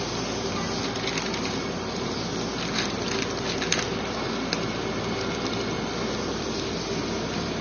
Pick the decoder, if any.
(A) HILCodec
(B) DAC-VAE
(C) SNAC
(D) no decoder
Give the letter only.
D